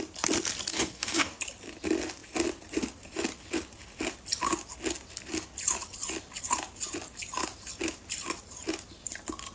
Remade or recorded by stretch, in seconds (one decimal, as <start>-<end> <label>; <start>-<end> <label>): 0.0-0.7 recorded; 0.7-1.4 remade; 1.4-9.5 recorded